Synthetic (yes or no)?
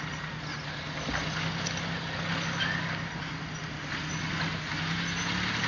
no